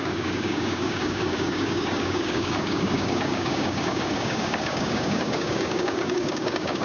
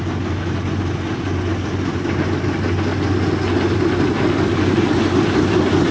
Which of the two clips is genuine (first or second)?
second